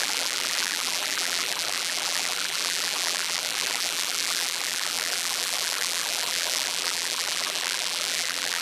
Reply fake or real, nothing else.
fake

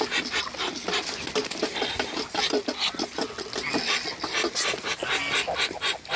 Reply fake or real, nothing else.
real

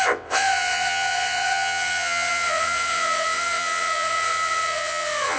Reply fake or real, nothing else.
fake